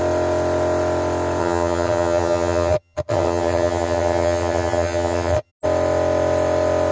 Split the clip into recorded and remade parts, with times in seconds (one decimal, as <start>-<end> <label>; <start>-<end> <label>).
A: 0.0-1.4 recorded; 1.4-5.5 remade; 5.5-6.9 recorded